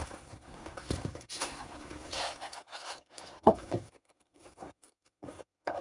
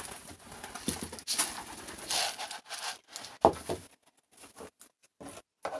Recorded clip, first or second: second